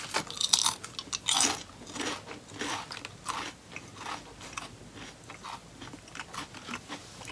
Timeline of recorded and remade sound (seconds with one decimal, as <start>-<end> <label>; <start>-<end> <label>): 0.0-7.3 recorded